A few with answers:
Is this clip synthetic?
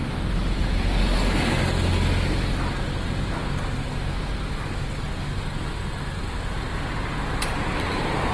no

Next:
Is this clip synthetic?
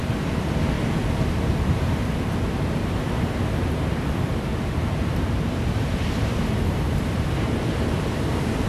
no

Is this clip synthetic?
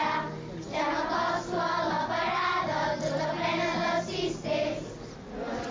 no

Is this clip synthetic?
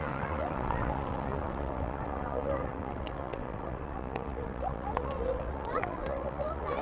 yes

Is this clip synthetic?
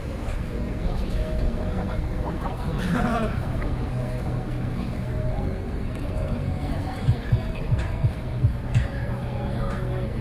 yes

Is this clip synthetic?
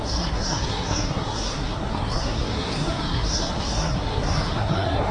yes